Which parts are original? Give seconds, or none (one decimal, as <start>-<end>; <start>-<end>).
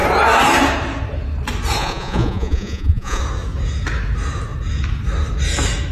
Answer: 0.0-1.8; 3.2-5.9